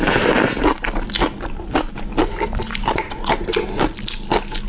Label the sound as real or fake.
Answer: real